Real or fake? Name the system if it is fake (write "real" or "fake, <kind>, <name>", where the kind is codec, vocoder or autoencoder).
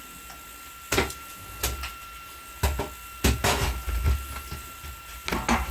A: real